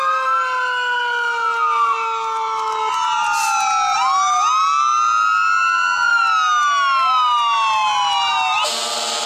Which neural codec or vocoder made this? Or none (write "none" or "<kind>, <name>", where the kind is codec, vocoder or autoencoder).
none